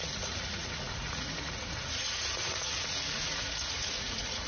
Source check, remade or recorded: remade